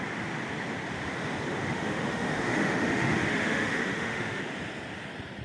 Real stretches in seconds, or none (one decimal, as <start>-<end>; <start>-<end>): 0.0-1.6; 4.4-5.4

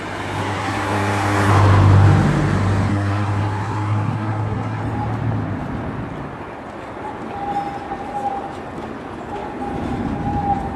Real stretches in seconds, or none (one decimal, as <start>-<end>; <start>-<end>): 0.0-0.4; 1.5-2.9; 4.8-10.8

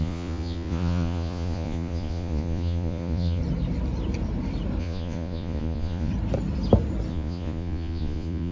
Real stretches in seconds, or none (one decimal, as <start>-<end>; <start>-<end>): 3.4-4.8; 6.1-7.1

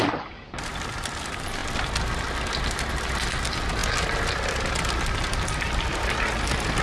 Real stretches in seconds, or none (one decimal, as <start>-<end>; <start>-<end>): 0.0-6.8

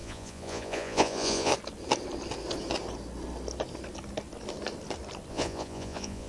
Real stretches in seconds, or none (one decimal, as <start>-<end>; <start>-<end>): 1.5-5.3